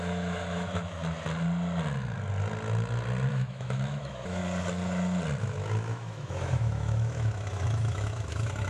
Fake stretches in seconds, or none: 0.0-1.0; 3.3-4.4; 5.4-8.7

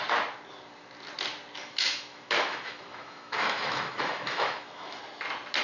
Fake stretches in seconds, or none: 1.6-5.0

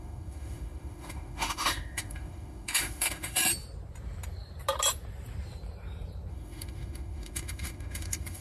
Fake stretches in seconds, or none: 0.0-3.4; 6.3-8.4

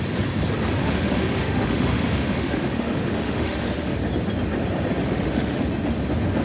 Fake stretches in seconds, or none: 0.8-4.0; 5.0-5.6

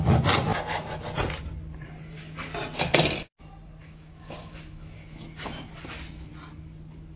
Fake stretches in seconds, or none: 3.8-5.7

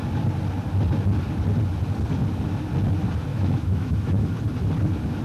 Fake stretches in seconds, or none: 3.3-4.3

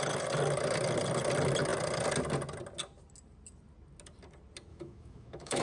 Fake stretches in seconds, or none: 4.7-5.6